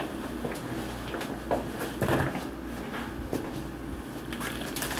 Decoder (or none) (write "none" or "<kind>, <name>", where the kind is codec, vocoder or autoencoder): none